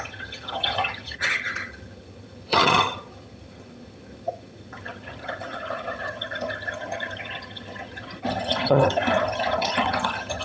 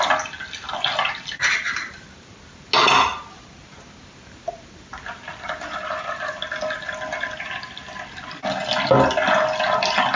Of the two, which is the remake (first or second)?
first